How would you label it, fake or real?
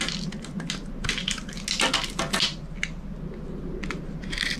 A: real